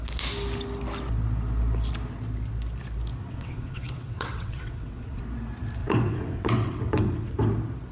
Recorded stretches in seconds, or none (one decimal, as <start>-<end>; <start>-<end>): 0.0-3.2; 5.2-5.8; 7.4-7.9

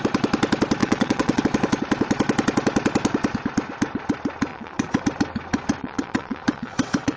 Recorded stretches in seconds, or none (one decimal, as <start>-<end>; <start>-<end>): 0.0-0.8; 1.4-4.5; 5.0-5.8

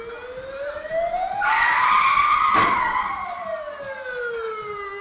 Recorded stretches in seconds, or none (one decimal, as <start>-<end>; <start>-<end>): 0.0-5.0